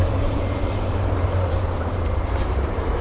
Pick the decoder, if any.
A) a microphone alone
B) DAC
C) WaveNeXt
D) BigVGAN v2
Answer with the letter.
D